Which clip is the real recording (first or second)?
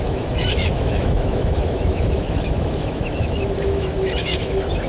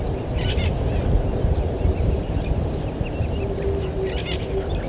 second